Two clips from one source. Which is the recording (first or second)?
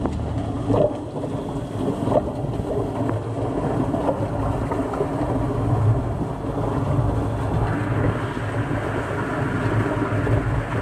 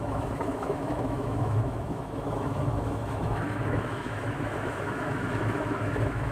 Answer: first